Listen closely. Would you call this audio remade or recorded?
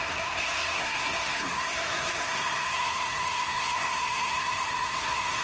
remade